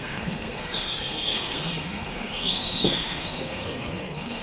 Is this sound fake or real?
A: fake